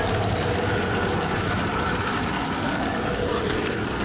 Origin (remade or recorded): recorded